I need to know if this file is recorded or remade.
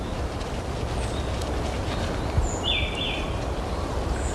recorded